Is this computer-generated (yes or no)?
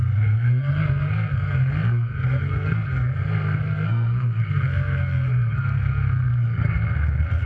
yes